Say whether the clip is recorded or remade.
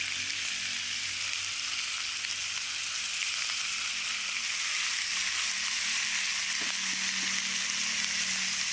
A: recorded